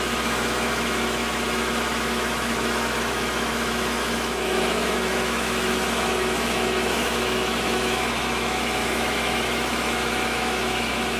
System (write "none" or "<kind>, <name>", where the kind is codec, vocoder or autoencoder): autoencoder, DAC-VAE